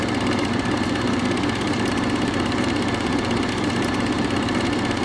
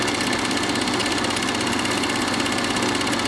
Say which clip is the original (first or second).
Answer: second